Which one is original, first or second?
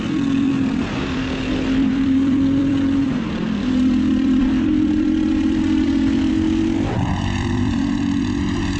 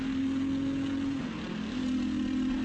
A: second